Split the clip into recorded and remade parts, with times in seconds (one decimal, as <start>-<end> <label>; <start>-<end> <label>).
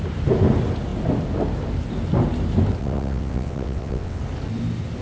0.0-2.8 recorded; 2.8-4.2 remade; 4.2-5.0 recorded